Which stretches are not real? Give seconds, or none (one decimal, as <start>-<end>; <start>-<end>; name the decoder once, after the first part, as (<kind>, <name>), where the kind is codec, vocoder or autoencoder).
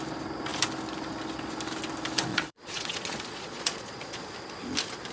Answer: 2.3-4.2 (vocoder, Vocos)